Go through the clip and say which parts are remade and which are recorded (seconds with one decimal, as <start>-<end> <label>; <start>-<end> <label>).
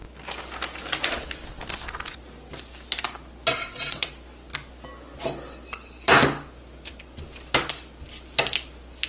0.0-3.5 recorded; 3.5-4.1 remade; 4.1-9.1 recorded